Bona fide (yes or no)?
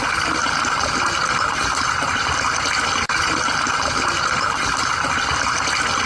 yes